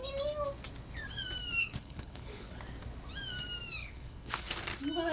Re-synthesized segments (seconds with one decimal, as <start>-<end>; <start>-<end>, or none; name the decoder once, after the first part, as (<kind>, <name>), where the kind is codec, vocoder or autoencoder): 1.6-2.6 (codec, HILCodec); 3.8-4.5